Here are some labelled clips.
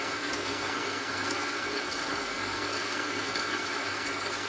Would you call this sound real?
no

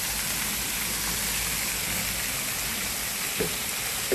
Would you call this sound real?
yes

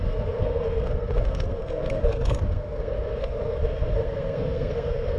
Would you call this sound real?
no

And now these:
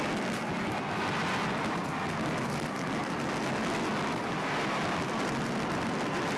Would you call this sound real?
yes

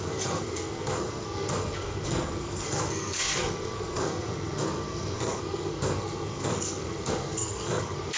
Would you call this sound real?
no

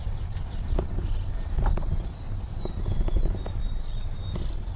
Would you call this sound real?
yes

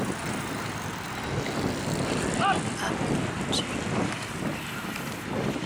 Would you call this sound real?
yes